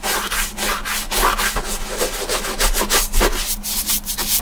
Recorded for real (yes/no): yes